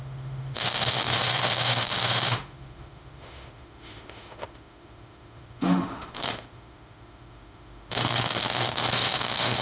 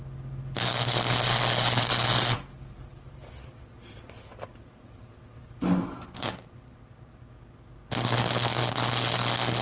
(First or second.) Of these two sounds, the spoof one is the first